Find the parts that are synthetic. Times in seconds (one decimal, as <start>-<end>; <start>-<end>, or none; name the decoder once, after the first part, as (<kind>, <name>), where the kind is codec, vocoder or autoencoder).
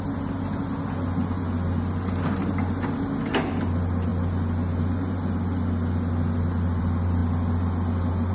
none